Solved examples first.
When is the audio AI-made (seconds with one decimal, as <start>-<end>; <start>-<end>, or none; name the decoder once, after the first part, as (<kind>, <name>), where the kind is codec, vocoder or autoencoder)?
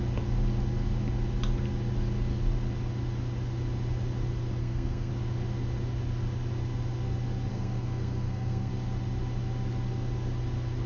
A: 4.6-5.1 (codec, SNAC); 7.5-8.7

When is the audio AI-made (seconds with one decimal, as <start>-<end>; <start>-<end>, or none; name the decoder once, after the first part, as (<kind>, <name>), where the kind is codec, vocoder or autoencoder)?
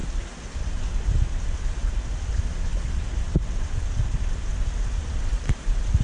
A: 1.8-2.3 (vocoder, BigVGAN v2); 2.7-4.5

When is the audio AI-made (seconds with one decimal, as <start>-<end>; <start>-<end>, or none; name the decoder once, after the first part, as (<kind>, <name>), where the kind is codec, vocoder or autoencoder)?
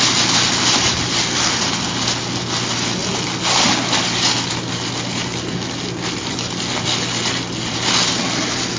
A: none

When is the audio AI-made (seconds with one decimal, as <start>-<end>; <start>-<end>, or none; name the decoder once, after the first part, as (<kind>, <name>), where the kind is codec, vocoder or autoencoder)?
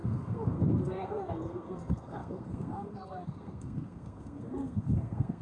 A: 0.0-5.4 (codec, SNAC)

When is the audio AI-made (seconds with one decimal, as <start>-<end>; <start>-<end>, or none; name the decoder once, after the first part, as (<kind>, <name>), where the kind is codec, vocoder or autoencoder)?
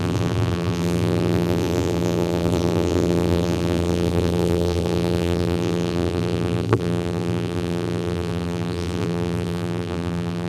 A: 0.0-10.5 (vocoder, BigVGAN v2)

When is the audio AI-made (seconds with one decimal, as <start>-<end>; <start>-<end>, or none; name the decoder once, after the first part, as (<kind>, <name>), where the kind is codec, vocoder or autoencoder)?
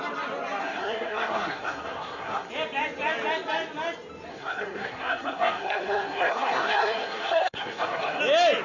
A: 0.6-2.5 (codec, SNAC); 4.3-8.2